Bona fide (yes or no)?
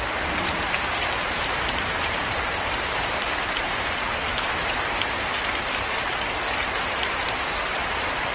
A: no